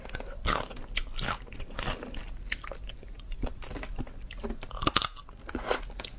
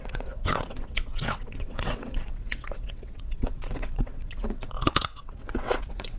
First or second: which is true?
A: first